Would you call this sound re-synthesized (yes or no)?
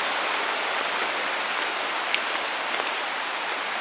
no